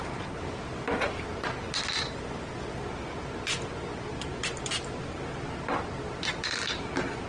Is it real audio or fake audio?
real